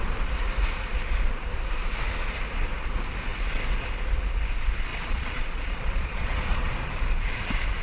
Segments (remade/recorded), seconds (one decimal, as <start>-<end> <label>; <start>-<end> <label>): 0.0-4.9 recorded; 4.9-6.7 remade; 6.7-7.8 recorded